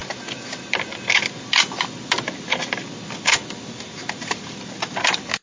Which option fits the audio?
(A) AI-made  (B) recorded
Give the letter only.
B